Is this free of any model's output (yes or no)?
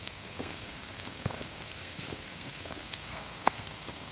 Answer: no